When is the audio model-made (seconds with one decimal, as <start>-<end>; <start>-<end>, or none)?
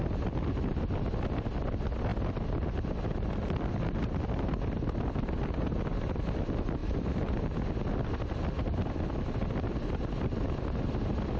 6.8-7.4